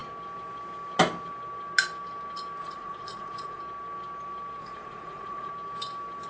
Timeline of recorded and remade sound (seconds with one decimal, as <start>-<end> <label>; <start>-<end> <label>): 0.0-2.6 recorded; 2.6-3.6 remade; 3.6-4.6 recorded; 4.6-5.5 remade; 5.5-6.3 recorded